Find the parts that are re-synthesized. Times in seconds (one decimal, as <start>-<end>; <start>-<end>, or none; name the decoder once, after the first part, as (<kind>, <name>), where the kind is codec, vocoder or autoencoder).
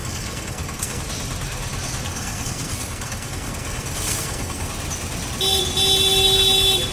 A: 0.0-1.0 (codec, SNAC); 2.1-4.7